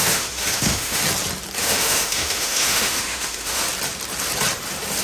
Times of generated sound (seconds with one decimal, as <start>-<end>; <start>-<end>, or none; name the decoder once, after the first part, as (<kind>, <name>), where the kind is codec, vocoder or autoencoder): 0.0-1.0 (autoencoder, DAC-VAE); 1.6-3.6